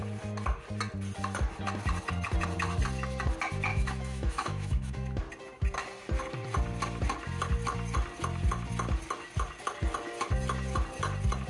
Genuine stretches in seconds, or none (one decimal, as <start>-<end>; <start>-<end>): 0.0-3.7; 5.2-11.5